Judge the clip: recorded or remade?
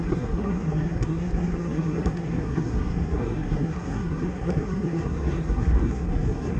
remade